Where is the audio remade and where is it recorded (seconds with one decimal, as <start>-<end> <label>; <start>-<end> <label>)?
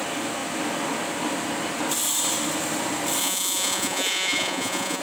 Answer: 0.0-3.2 recorded; 3.2-5.0 remade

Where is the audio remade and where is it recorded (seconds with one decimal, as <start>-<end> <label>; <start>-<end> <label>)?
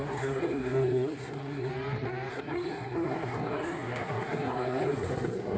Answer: 0.0-1.7 remade; 1.7-2.3 recorded; 2.3-5.6 remade